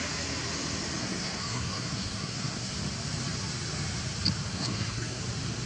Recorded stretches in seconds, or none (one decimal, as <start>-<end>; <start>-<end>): 0.0-1.0; 2.7-4.5; 5.2-5.7